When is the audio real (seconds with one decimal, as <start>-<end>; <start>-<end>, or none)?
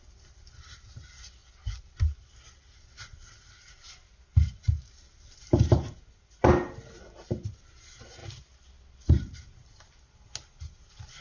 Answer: 0.0-1.4; 2.8-11.2